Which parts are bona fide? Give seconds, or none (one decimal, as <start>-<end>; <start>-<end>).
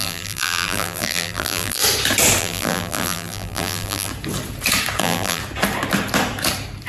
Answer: 1.8-2.4; 4.1-5.0; 5.4-6.9